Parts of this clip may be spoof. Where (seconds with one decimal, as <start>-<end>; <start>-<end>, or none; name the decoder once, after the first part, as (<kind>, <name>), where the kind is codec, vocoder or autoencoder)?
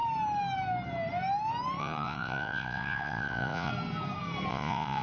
1.8-3.7 (vocoder, Vocos); 4.5-5.0